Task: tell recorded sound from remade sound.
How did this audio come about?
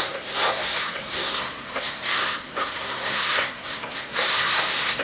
remade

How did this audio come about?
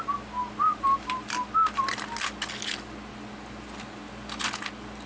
recorded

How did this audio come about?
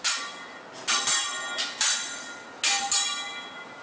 recorded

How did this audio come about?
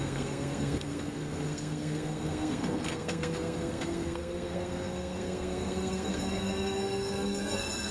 remade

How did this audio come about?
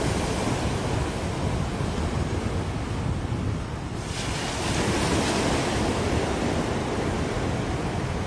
recorded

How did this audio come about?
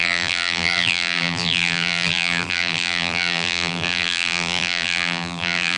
remade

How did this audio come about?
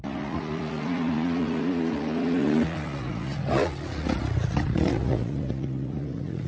remade